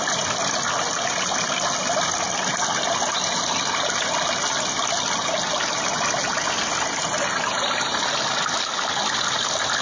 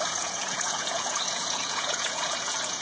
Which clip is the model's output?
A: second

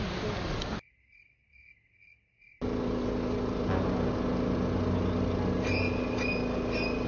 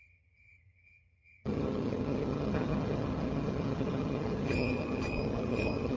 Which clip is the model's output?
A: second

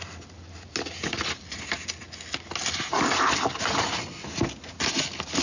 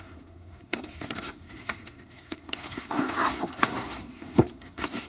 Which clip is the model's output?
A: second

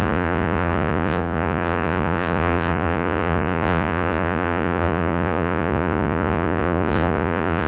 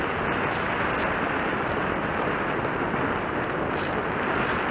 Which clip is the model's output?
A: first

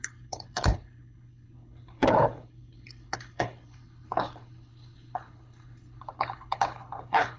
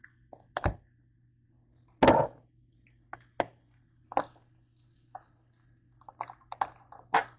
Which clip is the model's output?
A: first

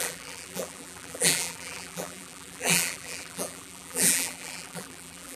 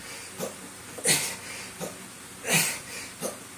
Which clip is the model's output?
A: first